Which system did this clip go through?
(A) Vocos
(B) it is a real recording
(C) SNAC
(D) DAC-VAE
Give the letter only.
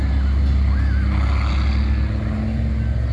B